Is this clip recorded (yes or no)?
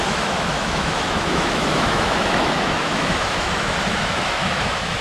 no